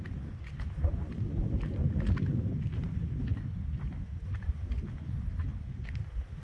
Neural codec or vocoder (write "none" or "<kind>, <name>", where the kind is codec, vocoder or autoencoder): none